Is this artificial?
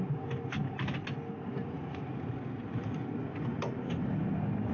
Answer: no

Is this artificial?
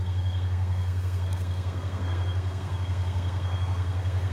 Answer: yes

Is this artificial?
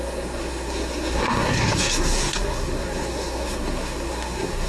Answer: yes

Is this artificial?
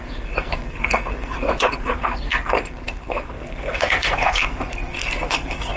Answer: yes